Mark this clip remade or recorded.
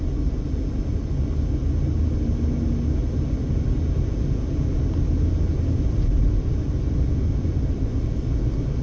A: recorded